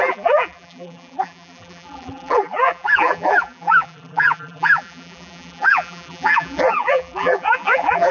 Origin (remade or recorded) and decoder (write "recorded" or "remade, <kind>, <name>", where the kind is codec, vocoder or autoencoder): remade, vocoder, BigVGAN v2